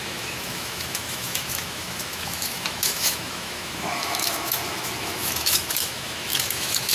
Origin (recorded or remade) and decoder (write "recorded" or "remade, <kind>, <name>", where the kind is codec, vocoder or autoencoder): remade, autoencoder, DAC-VAE